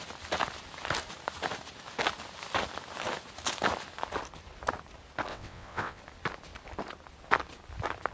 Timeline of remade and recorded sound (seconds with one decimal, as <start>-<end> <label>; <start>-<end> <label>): 0.0-5.3 recorded; 5.3-6.0 remade; 6.0-8.1 recorded